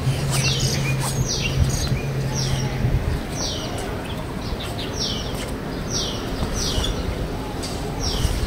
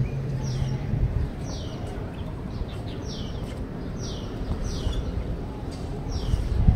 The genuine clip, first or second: first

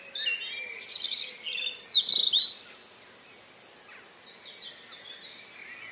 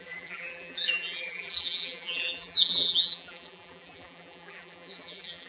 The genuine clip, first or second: first